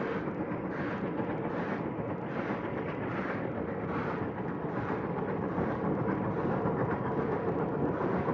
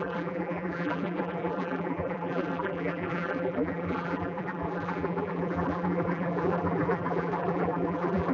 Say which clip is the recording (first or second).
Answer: first